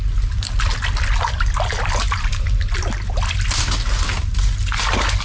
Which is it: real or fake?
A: real